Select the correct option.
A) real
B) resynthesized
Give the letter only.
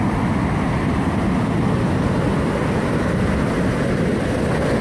A